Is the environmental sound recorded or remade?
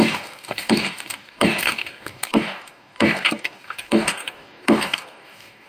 remade